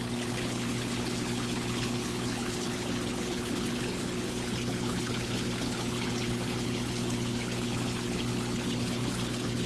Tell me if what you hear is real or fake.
fake